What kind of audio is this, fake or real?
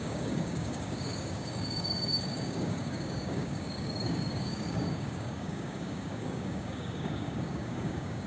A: fake